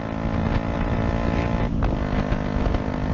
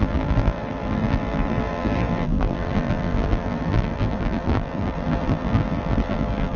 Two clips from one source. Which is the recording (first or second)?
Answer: first